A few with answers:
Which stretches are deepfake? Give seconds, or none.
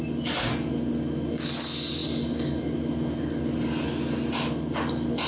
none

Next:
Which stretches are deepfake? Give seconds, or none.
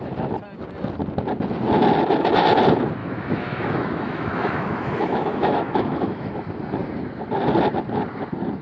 3.0-6.3 (autoencoder, DAC-VAE)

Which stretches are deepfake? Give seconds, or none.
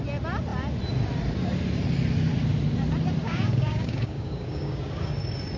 3.2-5.1 (codec, DAC)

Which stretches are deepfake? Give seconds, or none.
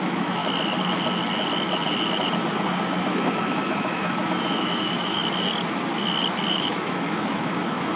0.0-0.4 (autoencoder, DAC-VAE); 3.1-5.2; 6.5-8.0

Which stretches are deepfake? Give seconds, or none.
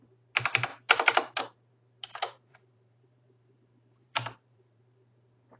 2.1-4.8 (vocoder, BigVGAN v2)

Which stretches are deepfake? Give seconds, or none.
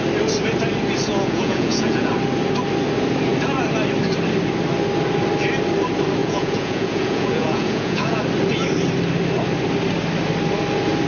1.1-2.1 (vocoder, Vocos); 6.2-8.2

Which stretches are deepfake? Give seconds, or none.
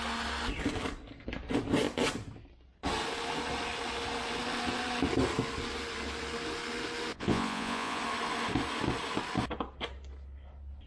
7.1-8.0 (vocoder, Vocos)